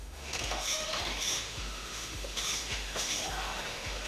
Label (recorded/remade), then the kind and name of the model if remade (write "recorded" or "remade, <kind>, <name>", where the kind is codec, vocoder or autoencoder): remade, autoencoder, DAC-VAE